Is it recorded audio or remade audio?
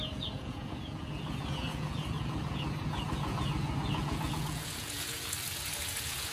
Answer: remade